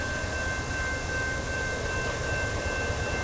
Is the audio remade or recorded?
recorded